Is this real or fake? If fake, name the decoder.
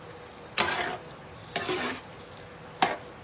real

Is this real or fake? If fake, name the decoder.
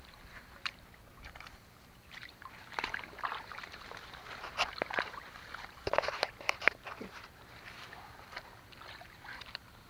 fake, vocoder, BigVGAN v2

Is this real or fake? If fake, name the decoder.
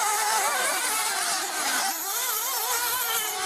fake, vocoder, BigVGAN v2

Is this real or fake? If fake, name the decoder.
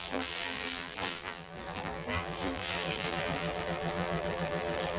fake, vocoder, BigVGAN v2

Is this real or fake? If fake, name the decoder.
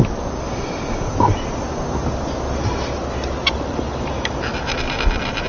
real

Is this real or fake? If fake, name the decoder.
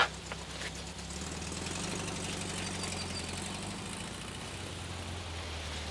real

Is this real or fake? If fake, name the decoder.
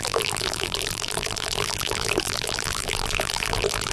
fake, vocoder, BigVGAN v2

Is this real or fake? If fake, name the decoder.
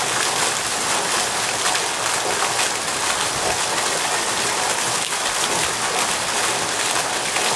real